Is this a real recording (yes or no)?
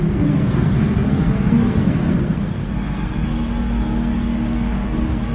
no